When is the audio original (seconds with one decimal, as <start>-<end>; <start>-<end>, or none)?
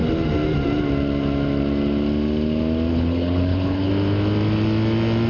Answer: 0.0-2.9; 3.9-5.3